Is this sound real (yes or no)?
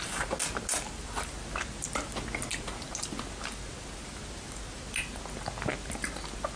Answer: yes